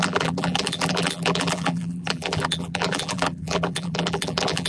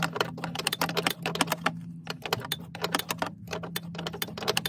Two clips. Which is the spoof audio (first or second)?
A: first